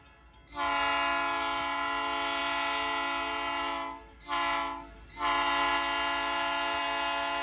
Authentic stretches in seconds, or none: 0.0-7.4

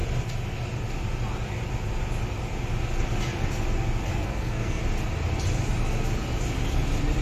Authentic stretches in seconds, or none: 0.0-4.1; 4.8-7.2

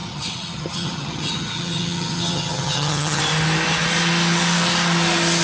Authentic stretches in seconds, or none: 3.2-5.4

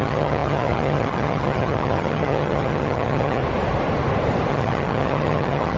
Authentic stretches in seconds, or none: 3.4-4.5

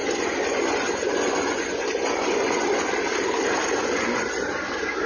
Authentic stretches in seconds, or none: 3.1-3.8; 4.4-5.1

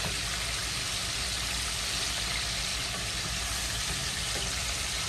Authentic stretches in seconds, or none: 0.0-2.7; 3.5-4.0

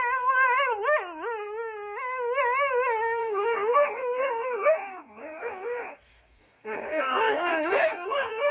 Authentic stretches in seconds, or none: 0.0-3.2

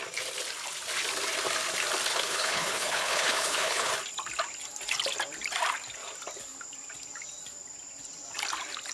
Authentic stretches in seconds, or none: 0.0-2.1; 3.9-8.9